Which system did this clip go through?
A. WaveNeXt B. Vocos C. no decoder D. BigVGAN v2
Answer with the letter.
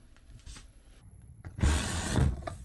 B